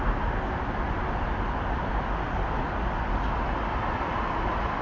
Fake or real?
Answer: real